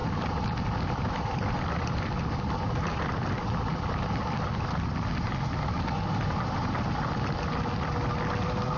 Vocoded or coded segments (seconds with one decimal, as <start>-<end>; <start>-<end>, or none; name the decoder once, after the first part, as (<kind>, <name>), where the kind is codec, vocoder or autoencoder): none